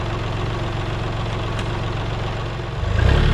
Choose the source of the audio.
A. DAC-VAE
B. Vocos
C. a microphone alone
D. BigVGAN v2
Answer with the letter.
C